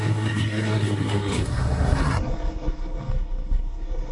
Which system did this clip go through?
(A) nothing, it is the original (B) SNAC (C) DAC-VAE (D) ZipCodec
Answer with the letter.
B